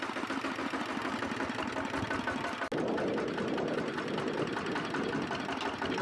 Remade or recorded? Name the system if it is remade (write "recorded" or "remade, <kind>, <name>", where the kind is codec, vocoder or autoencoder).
recorded